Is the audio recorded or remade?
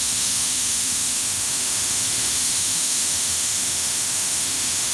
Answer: remade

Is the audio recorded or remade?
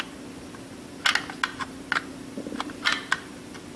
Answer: recorded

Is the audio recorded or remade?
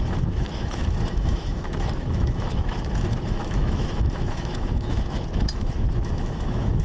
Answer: remade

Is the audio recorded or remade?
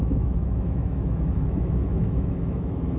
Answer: remade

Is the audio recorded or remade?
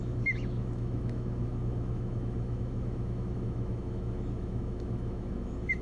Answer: remade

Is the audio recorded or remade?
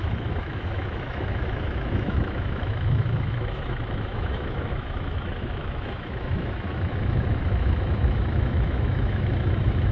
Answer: remade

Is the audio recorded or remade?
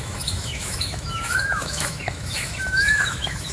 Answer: remade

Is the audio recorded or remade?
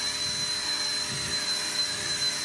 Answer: recorded